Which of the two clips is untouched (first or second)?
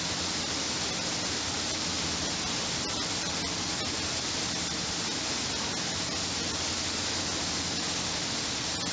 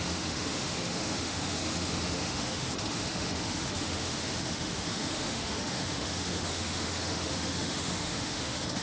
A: first